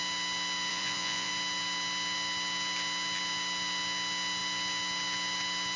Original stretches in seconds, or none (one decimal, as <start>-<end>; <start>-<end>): 0.0-0.7; 1.3-5.8